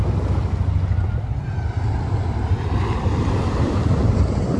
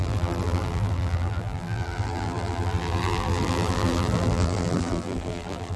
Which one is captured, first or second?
first